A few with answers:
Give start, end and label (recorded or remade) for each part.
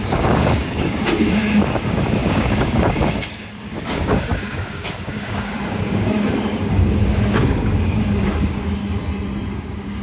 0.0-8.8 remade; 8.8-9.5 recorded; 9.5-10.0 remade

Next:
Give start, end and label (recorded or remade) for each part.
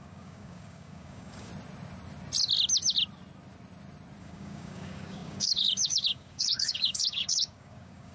0.0-1.5 remade; 1.5-4.2 recorded; 4.2-8.1 remade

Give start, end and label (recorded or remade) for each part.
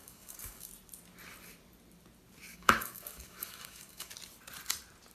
0.0-0.7 remade; 0.7-2.5 recorded; 2.5-4.1 remade; 4.1-5.1 recorded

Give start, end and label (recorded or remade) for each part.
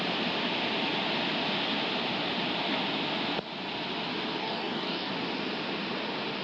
0.0-4.4 recorded; 4.4-5.1 remade; 5.1-6.4 recorded